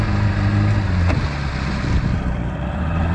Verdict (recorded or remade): recorded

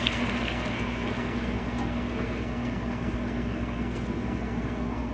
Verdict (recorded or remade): remade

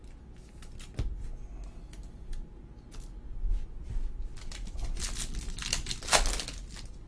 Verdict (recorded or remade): recorded